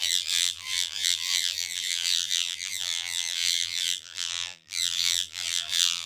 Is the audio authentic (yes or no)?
no